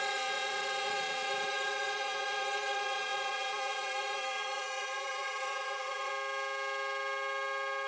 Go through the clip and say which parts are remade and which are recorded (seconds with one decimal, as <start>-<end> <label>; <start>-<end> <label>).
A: 0.0-6.1 remade; 6.1-7.9 recorded